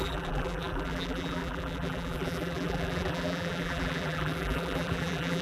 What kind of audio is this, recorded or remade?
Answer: remade